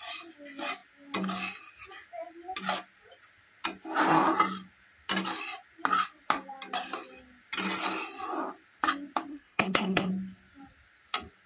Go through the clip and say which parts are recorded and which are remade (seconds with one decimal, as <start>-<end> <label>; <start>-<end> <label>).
0.0-9.3 recorded; 9.3-10.1 remade; 10.1-11.5 recorded